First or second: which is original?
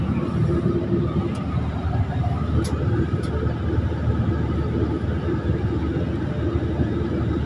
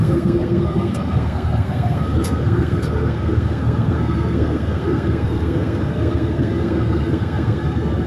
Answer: first